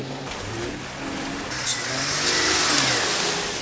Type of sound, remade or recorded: recorded